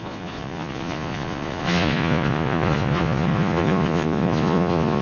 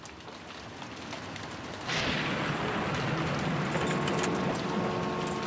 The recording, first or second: second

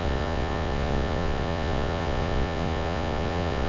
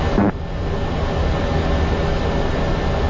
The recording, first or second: second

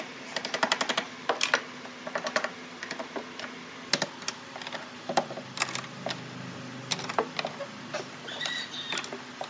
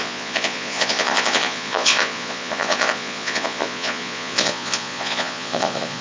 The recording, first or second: first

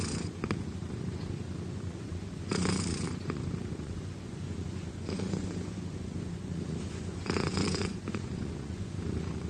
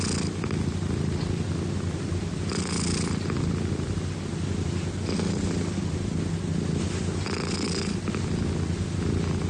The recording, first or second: second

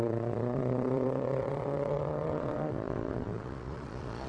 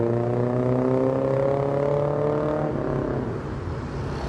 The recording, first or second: second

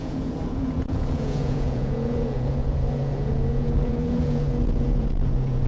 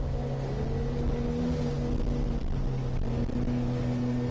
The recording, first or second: second